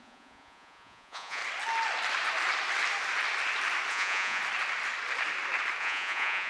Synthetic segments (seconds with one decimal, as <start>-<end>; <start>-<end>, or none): 0.0-1.4; 3.9-4.4; 5.8-6.5